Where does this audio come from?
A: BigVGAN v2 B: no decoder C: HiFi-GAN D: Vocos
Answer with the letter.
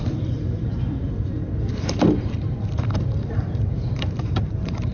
A